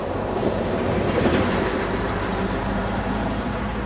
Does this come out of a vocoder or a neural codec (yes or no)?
yes